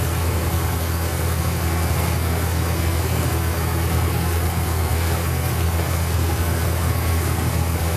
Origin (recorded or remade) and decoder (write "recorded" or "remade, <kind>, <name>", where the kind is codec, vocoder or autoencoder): remade, codec, SNAC